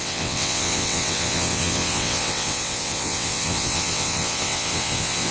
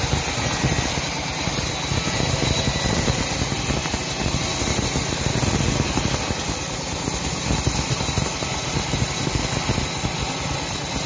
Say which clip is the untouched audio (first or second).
second